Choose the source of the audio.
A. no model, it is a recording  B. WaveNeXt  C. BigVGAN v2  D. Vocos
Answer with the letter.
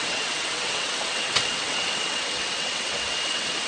B